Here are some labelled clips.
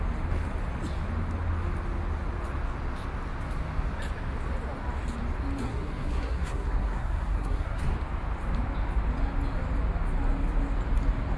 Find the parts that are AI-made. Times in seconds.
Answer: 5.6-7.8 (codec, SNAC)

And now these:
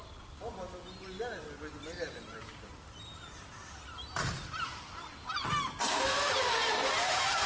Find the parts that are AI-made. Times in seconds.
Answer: none

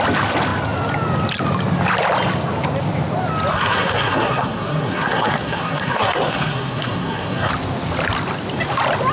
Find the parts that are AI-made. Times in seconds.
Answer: 3.5-7.5 (codec, SNAC)

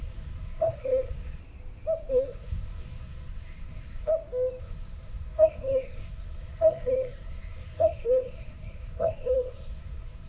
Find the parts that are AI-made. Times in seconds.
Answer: 0.0-1.4 (codec, SNAC); 2.1-4.1; 4.6-10.3

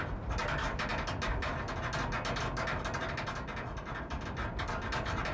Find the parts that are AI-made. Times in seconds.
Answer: none